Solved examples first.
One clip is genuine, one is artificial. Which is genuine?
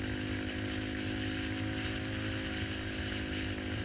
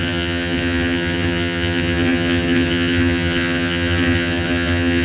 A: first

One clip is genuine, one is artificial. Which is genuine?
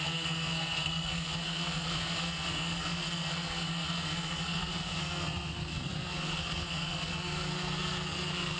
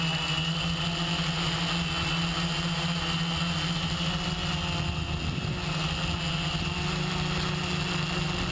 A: second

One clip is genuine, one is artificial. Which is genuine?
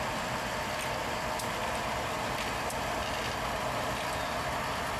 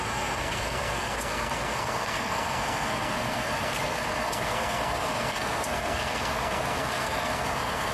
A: first